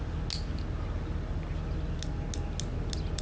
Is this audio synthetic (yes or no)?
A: no